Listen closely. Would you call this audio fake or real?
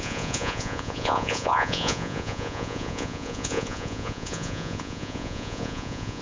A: fake